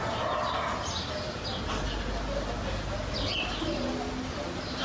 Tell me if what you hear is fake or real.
real